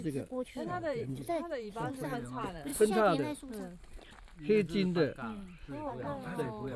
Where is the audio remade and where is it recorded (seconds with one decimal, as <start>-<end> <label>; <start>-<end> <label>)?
0.0-2.7 remade; 2.7-6.0 recorded; 6.0-6.8 remade